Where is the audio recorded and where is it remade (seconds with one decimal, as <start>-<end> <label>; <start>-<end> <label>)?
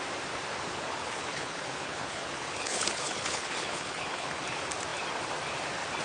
0.0-0.7 recorded; 0.7-4.3 remade; 4.3-6.0 recorded